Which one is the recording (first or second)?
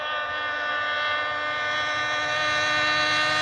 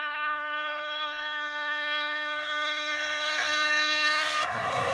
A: first